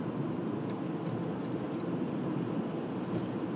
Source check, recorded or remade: recorded